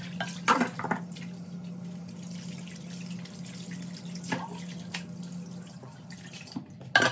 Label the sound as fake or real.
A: real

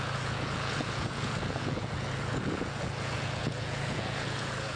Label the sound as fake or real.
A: fake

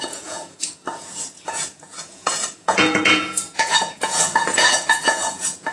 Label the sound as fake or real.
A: fake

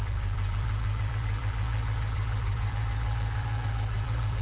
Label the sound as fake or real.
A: fake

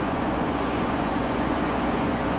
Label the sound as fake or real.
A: fake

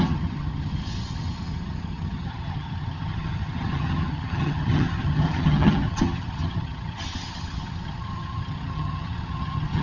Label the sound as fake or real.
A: fake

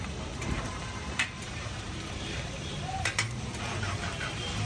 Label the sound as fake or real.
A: fake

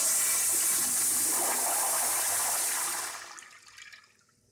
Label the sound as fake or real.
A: real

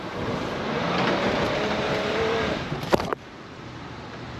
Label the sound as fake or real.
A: fake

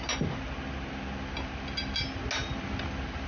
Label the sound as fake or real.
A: real